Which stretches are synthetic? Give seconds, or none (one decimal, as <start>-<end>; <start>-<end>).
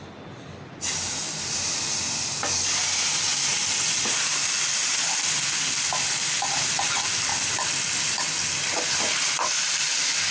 none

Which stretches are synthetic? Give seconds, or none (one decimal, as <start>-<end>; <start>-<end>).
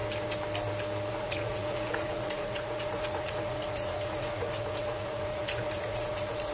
1.1-6.5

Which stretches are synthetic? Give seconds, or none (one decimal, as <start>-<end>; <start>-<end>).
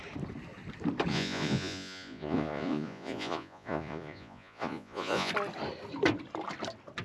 1.1-5.3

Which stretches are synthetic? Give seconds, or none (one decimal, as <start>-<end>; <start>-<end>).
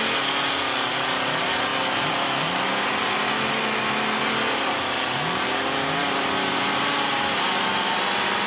none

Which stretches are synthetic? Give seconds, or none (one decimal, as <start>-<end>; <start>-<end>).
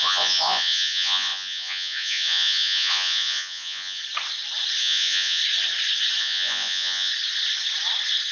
0.0-4.0; 4.8-5.4; 6.2-7.1